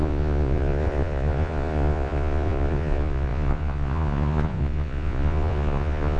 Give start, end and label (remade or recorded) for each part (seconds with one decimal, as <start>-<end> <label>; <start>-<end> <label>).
0.0-6.2 remade